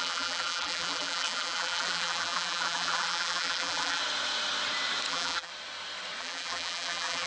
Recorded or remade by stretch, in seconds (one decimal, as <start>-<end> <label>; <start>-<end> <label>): 0.0-4.0 remade; 4.0-5.1 recorded; 5.1-5.5 remade; 5.5-6.2 recorded; 6.2-7.3 remade